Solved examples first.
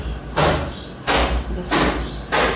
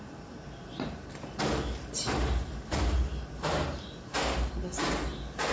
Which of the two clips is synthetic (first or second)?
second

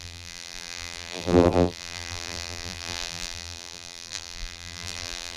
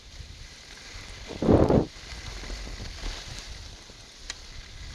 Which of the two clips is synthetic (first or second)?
first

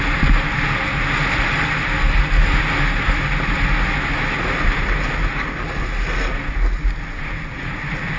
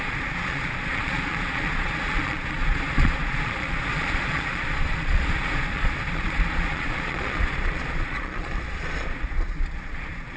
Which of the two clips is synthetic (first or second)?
second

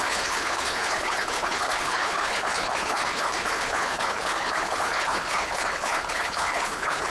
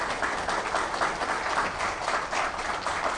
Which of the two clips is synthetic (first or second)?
first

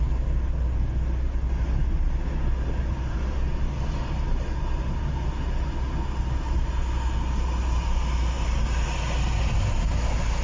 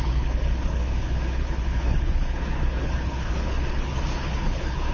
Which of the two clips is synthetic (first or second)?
second